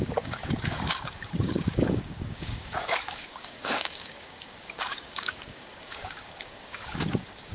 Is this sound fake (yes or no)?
yes